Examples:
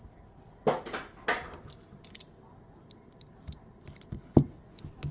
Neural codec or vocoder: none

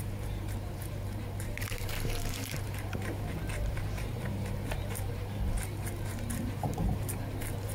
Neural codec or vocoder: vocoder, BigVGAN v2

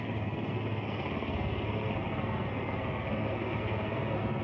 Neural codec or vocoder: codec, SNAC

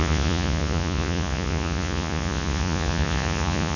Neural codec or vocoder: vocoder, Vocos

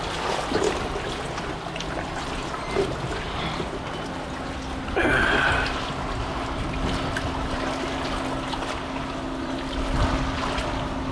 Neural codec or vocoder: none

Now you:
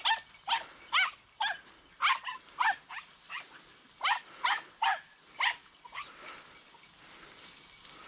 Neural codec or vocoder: none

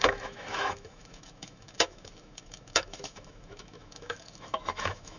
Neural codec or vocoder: autoencoder, DAC-VAE